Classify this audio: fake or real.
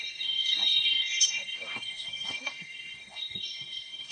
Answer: fake